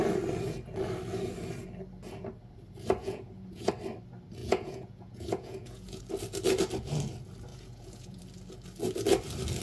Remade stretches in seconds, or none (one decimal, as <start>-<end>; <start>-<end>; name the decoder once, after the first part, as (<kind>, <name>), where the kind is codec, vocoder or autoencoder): 3.0-3.7 (vocoder, Vocos); 4.4-6.0; 7.5-8.2